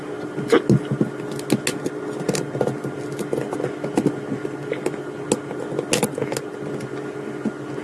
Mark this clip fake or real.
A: real